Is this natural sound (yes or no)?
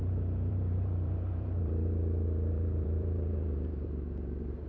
no